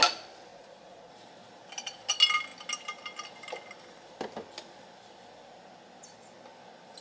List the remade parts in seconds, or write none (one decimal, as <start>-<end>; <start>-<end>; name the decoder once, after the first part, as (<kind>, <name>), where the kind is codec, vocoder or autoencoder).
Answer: 0.5-1.1 (vocoder, Vocos)